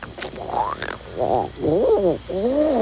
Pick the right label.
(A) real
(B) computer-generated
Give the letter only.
A